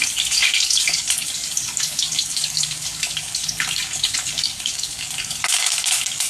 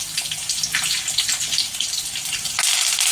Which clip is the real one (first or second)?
second